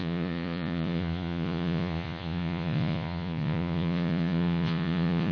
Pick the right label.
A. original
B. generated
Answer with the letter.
B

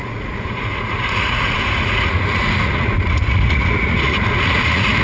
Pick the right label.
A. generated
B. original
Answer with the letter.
A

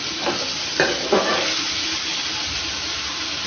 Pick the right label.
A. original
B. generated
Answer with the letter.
A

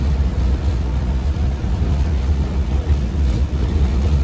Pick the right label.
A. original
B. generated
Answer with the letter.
B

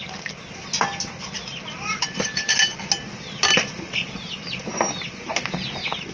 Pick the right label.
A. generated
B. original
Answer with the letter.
B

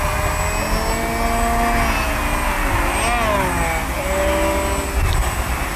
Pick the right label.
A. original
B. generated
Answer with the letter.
A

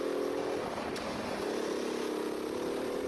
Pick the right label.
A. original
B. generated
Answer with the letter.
A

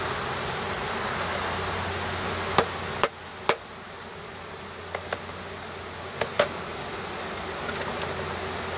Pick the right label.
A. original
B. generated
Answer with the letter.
A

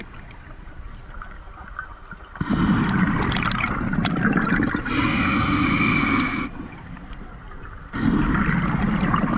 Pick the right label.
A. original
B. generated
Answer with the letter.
A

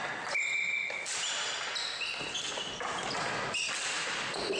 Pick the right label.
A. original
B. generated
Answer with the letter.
A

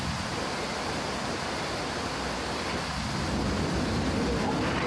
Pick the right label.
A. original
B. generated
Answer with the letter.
A